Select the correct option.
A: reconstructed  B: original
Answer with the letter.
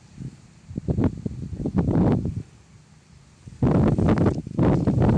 B